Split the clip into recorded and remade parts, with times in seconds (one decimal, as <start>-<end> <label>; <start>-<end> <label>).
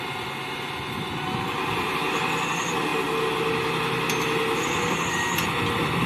0.0-6.1 recorded